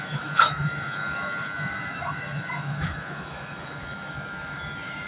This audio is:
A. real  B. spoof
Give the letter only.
B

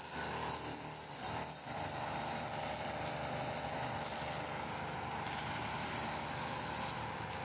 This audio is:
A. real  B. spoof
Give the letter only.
A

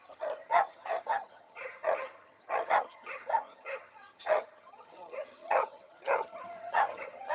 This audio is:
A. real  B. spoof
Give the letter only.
B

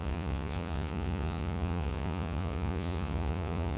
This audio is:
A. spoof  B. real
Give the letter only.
A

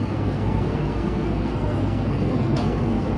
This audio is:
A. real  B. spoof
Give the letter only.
B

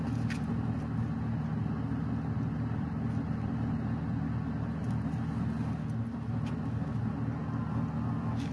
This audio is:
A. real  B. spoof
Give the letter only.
A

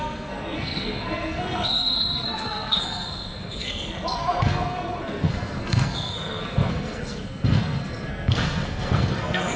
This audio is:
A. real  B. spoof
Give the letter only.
B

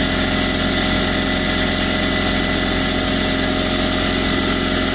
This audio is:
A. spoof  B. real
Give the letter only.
B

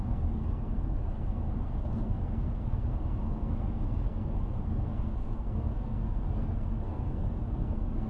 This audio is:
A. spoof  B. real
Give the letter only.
A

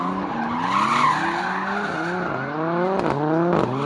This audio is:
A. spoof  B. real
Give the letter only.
B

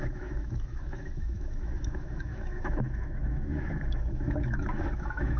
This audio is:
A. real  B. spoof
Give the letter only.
B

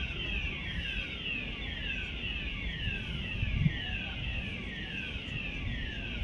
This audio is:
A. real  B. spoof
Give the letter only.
A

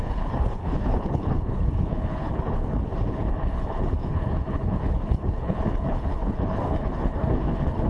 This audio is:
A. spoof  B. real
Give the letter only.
A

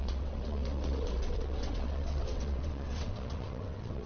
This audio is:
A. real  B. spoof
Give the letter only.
B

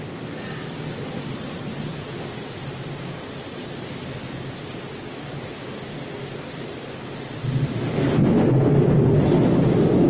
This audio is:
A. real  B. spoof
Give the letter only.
A